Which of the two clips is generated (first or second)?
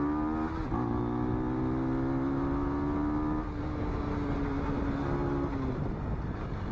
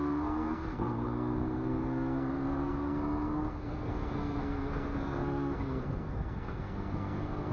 second